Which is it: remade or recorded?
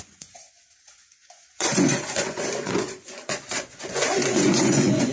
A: remade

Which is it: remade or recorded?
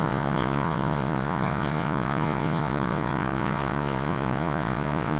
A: remade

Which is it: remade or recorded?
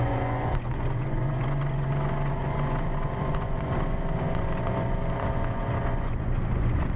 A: remade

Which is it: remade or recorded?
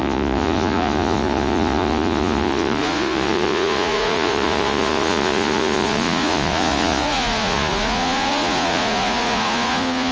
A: remade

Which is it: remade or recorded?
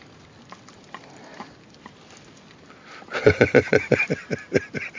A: recorded